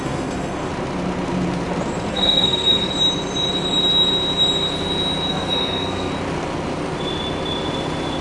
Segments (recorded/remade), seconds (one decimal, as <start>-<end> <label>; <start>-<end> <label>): 0.0-0.7 remade; 0.7-2.1 recorded; 2.1-2.9 remade; 2.9-5.3 recorded; 5.3-6.1 remade; 6.1-8.2 recorded